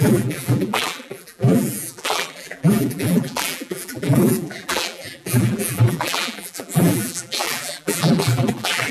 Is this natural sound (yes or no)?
no